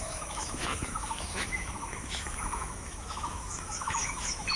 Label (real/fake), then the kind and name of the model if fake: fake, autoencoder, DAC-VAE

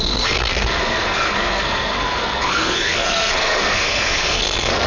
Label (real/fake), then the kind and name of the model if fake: fake, codec, SNAC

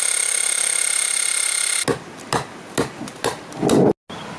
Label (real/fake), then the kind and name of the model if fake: real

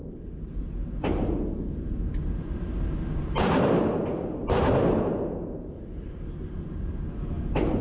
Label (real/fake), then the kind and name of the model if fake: real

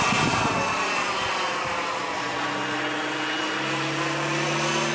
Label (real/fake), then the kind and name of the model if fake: real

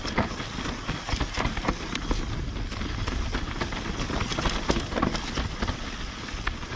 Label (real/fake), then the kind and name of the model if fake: real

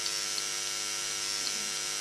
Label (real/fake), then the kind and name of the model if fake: real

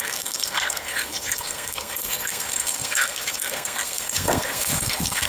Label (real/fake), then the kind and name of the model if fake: fake, codec, SNAC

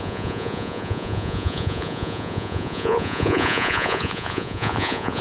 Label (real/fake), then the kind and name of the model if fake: fake, vocoder, Vocos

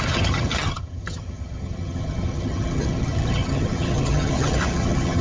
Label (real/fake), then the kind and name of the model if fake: fake, vocoder, HiFi-GAN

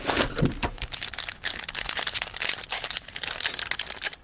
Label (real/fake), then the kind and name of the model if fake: real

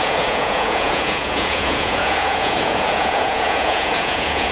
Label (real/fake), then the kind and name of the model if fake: fake, vocoder, Vocos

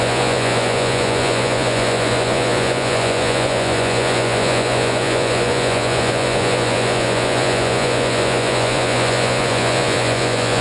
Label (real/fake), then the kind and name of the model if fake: fake, vocoder, Vocos